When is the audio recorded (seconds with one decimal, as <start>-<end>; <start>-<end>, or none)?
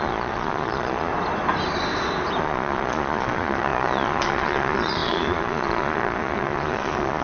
1.1-2.4